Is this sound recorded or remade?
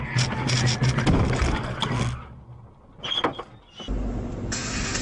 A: recorded